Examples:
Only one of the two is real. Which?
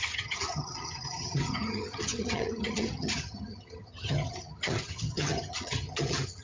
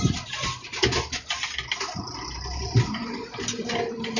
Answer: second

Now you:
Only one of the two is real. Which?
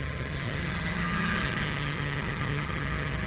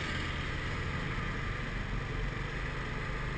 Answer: second